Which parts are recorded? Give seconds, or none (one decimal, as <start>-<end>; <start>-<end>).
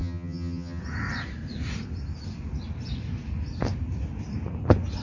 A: 0.8-5.0